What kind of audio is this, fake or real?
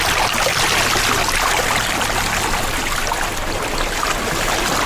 real